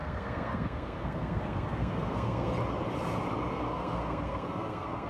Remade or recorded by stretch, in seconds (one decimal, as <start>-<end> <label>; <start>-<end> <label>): 0.0-2.5 remade; 2.5-3.5 recorded; 3.5-5.1 remade